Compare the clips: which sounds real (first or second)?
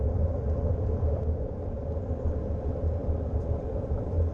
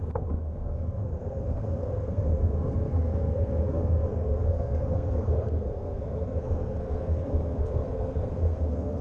first